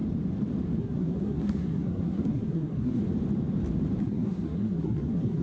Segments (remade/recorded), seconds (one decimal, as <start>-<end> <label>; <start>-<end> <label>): 0.0-0.8 recorded; 0.8-3.0 remade; 3.0-4.0 recorded; 4.0-5.4 remade